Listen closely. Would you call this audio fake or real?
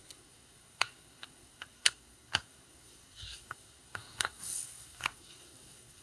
fake